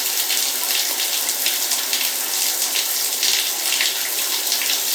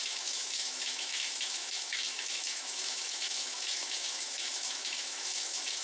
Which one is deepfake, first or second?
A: second